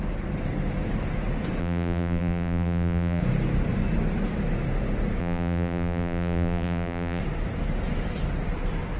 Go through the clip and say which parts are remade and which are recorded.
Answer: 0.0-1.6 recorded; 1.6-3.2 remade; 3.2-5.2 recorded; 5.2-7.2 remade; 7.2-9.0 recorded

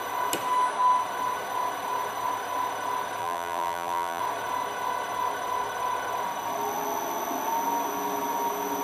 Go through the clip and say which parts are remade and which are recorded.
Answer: 0.0-3.2 recorded; 3.2-4.2 remade; 4.2-8.8 recorded

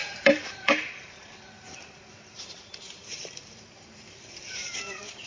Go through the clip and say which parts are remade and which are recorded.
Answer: 0.0-5.3 remade

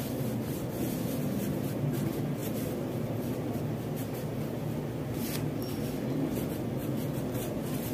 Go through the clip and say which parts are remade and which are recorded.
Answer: 0.0-6.8 recorded; 6.8-7.4 remade; 7.4-7.9 recorded